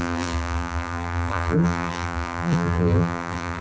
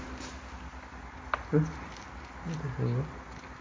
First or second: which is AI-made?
first